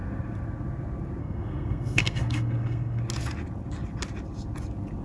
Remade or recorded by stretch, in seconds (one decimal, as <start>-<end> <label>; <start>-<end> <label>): 0.0-1.2 recorded; 1.2-3.0 remade; 3.0-5.0 recorded

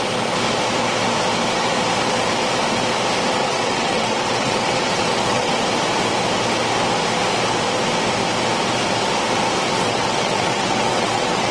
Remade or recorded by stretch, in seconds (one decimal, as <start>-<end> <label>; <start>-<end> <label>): 0.0-3.4 recorded; 3.4-5.5 remade; 5.5-9.7 recorded; 9.7-11.5 remade

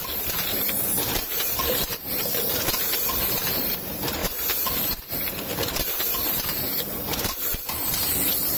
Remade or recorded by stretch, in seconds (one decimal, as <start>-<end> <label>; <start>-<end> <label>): 0.0-8.6 remade